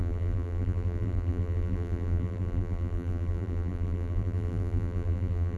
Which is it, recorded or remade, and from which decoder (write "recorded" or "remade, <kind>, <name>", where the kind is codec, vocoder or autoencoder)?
remade, vocoder, BigVGAN v2